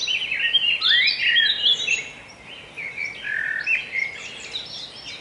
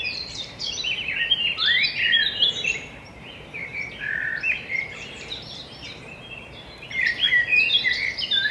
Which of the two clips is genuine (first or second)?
first